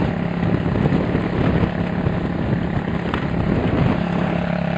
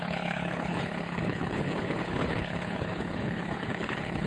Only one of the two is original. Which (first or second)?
first